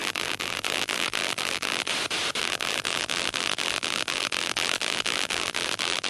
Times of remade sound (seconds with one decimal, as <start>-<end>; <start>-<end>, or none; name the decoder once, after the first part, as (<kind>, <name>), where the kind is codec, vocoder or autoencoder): 0.0-1.9 (vocoder, BigVGAN v2); 2.4-6.1